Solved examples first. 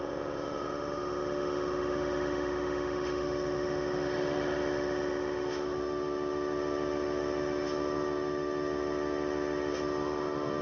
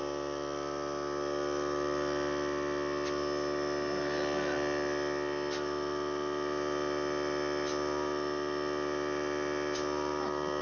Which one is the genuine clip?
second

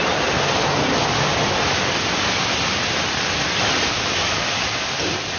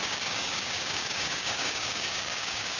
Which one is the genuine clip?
first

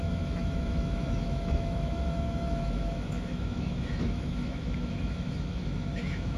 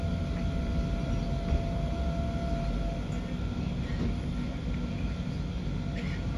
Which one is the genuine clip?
second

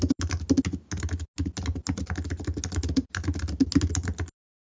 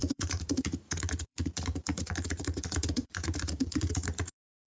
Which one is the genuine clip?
first